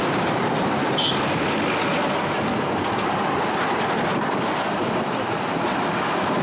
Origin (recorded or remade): recorded